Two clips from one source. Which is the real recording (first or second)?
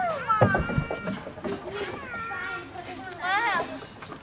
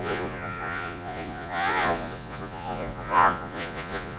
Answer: first